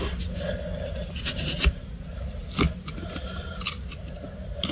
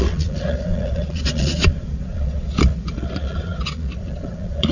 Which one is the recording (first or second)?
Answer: first